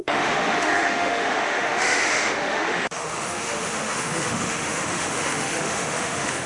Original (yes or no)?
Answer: no